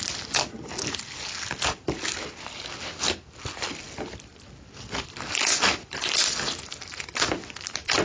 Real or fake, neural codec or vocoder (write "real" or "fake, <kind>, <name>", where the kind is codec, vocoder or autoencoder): real